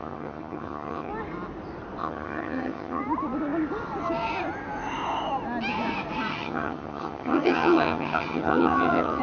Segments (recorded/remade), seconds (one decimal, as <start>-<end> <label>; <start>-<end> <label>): 0.0-1.1 remade; 1.1-2.0 recorded; 2.0-3.0 remade; 3.0-6.3 recorded; 6.3-9.2 remade